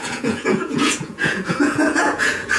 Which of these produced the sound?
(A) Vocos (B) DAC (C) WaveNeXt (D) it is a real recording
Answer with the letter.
A